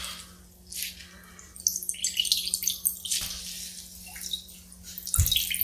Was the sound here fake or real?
real